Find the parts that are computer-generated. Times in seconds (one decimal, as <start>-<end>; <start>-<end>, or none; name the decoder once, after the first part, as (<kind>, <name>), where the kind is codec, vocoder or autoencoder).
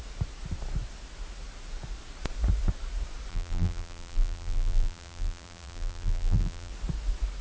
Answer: 3.3-6.7 (vocoder, BigVGAN v2)